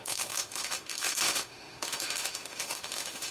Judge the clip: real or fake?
fake